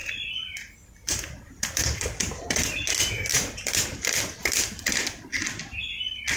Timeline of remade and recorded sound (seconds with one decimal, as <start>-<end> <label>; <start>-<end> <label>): 0.0-2.8 remade; 2.8-3.3 recorded; 3.3-5.6 remade; 5.6-6.4 recorded